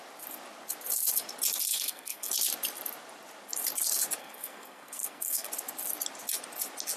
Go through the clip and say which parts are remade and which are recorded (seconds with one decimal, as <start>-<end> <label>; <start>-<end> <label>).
0.0-1.7 recorded; 1.7-2.3 remade; 2.3-4.2 recorded; 4.2-5.5 remade; 5.5-7.0 recorded